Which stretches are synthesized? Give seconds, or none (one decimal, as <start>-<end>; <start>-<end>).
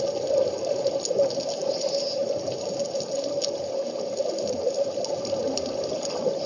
none